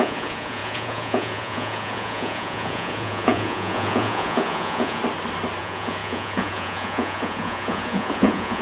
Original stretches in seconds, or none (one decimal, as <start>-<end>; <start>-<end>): 5.0-5.6